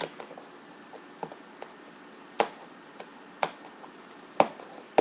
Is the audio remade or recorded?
recorded